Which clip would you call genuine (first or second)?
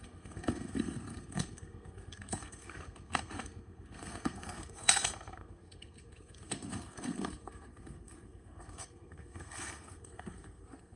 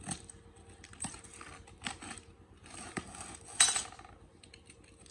second